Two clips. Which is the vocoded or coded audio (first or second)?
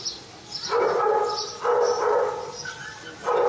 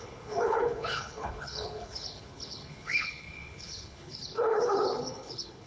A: second